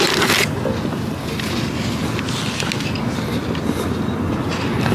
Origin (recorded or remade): recorded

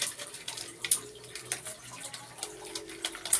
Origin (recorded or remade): remade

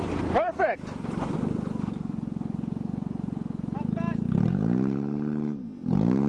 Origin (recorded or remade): recorded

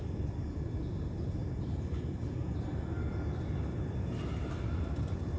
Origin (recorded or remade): recorded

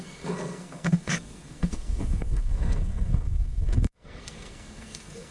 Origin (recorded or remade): remade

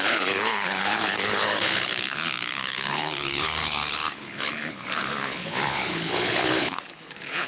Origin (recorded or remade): remade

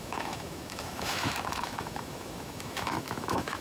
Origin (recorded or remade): remade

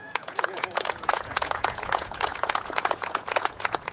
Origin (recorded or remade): remade